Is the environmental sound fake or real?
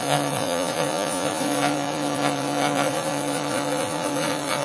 fake